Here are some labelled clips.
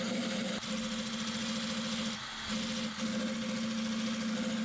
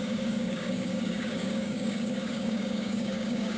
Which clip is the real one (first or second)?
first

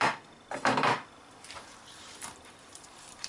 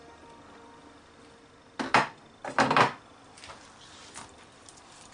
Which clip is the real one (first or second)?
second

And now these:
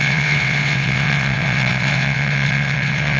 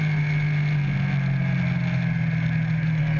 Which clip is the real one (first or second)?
second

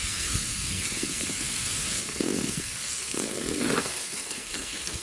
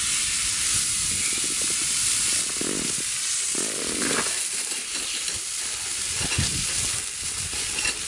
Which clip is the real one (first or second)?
second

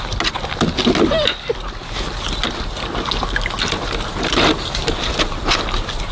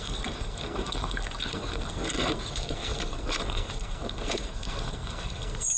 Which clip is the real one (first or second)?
first